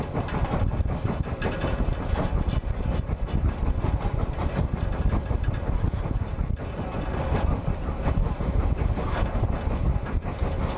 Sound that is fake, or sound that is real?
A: real